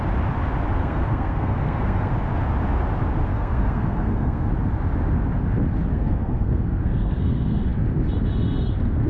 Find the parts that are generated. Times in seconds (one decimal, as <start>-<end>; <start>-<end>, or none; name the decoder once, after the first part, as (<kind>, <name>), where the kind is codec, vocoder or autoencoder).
0.8-2.1 (codec, SNAC); 3.3-4.5; 5.9-7.6